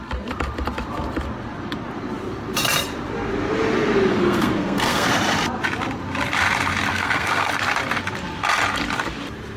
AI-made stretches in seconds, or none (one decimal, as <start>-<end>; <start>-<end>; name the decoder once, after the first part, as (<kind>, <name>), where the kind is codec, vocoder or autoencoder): 4.1-5.1 (codec, SNAC); 6.9-7.5